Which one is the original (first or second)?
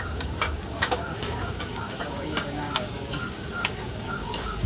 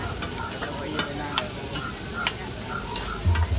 second